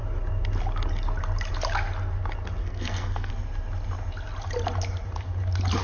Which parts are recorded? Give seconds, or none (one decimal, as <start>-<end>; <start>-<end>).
0.0-2.6; 3.3-5.8